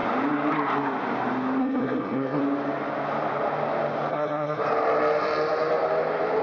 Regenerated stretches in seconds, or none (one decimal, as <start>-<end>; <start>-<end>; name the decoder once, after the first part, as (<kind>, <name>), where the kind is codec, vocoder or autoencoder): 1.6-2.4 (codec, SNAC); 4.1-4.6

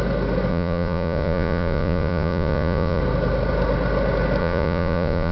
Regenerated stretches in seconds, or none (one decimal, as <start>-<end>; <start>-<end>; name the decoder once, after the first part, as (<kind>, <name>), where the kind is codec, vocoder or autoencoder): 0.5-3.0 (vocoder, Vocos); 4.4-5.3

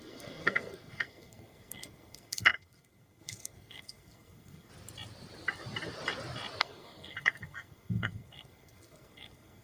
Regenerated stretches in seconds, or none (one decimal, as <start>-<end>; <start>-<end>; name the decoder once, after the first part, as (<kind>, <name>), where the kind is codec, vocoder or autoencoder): 0.0-4.7 (codec, SNAC); 6.6-9.6

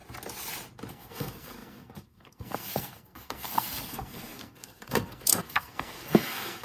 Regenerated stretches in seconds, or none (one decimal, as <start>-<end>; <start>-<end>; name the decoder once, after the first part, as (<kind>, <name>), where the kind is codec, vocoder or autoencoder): 0.9-6.6 (codec, SNAC)

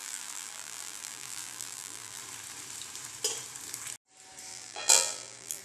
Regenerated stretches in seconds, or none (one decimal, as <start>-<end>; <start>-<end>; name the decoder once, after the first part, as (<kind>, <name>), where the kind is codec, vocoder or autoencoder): 0.0-2.2 (vocoder, BigVGAN v2); 4.5-5.6

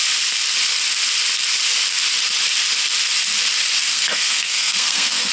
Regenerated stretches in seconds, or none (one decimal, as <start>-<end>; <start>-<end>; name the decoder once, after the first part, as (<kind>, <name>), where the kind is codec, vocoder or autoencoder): 3.9-5.3 (codec, SNAC)

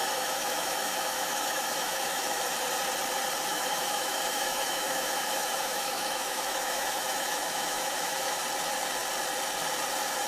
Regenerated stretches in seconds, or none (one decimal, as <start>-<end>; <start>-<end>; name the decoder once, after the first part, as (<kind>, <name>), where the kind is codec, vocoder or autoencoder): 0.0-2.4 (autoencoder, DAC-VAE); 3.5-8.4

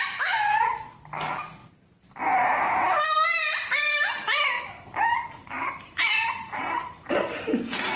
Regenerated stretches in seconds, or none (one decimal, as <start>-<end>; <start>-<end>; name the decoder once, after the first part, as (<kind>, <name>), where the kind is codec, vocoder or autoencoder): 5.4-7.6 (vocoder, BigVGAN v2)